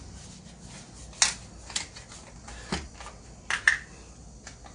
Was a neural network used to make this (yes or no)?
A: no